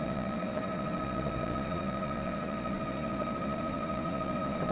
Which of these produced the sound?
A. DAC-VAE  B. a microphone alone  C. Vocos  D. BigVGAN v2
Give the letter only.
C